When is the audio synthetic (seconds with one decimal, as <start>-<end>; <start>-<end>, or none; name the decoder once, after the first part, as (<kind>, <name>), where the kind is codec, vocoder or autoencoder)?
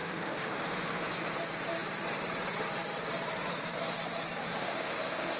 0.0-1.1 (autoencoder, DAC-VAE); 4.4-5.4